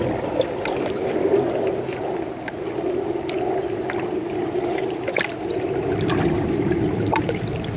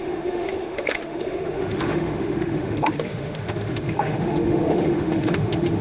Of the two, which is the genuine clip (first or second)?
first